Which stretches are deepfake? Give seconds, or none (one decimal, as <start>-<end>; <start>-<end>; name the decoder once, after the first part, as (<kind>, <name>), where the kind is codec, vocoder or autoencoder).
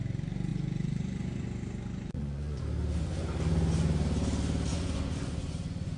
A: 0.5-2.6 (vocoder, Vocos); 4.7-6.0